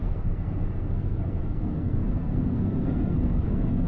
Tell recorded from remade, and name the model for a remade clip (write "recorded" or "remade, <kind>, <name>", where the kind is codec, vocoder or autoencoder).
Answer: remade, codec, SNAC